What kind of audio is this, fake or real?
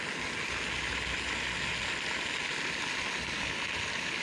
real